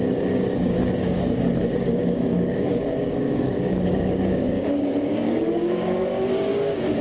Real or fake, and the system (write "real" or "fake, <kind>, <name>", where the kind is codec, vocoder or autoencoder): fake, codec, DAC